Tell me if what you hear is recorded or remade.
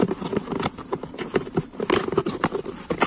recorded